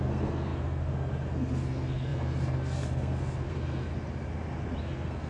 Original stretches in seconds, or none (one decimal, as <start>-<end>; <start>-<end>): 3.9-4.8